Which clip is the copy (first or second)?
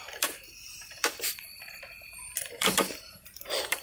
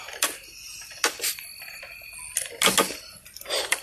first